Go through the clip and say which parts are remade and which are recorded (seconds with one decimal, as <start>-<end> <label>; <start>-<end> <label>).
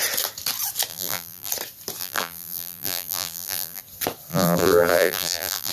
0.0-0.9 recorded; 0.9-1.5 remade; 1.5-2.0 recorded; 2.0-3.8 remade; 3.8-4.3 recorded; 4.3-5.7 remade